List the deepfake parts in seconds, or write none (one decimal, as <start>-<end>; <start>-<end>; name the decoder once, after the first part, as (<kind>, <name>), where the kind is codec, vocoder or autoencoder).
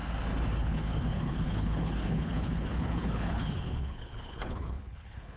0.6-5.4 (codec, HILCodec)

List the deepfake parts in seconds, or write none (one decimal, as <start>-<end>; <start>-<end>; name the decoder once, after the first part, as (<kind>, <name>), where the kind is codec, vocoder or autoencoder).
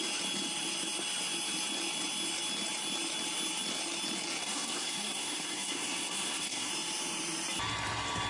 4.4-6.7 (codec, SNAC)